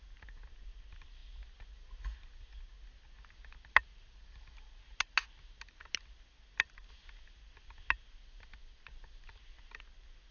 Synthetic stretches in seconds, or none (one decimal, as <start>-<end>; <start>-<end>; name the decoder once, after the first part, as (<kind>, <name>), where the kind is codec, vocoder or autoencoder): none